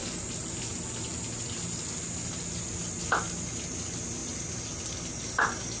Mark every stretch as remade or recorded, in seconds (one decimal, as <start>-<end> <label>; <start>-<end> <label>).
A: 0.0-5.8 recorded